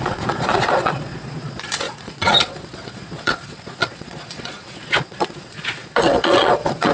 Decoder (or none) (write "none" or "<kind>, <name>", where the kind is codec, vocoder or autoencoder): vocoder, Vocos